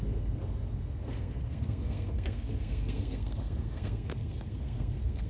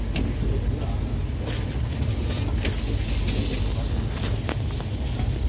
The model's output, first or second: first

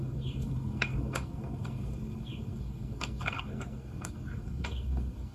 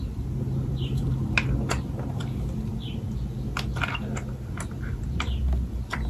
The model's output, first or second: first